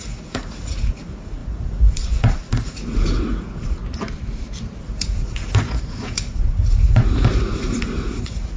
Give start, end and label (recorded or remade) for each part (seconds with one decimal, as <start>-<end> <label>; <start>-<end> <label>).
0.0-3.8 remade; 3.8-4.8 recorded; 4.8-8.6 remade